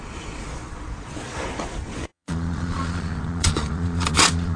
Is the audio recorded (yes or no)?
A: no